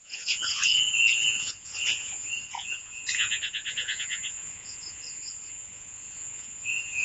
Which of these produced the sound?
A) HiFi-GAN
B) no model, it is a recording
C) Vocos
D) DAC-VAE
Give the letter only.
C